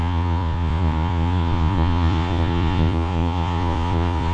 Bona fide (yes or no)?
no